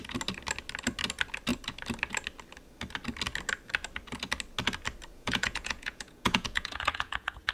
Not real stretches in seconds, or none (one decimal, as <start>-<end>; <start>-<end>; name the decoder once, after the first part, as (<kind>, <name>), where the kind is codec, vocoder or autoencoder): 5.1-7.5 (vocoder, Vocos)